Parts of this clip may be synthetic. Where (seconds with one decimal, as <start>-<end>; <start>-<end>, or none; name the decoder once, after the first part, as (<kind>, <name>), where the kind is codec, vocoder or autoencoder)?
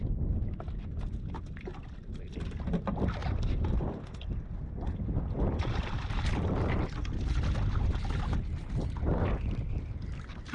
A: none